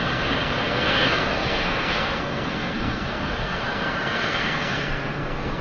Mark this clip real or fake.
fake